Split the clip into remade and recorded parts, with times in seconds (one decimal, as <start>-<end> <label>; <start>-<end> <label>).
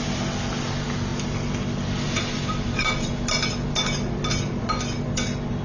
0.0-5.6 recorded